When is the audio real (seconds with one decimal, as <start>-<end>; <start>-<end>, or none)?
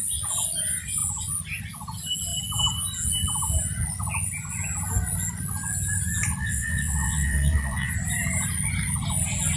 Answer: 0.0-6.4; 7.9-9.6